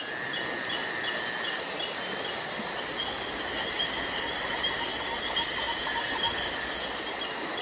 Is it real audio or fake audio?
real